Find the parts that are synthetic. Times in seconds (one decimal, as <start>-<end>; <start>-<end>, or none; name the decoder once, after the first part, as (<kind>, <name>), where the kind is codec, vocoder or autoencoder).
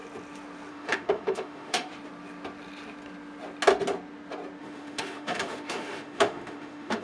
0.7-1.9 (autoencoder, DAC-VAE); 4.6-7.0